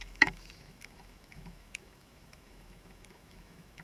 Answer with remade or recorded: remade